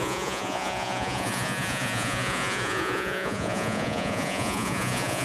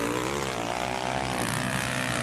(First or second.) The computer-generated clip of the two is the first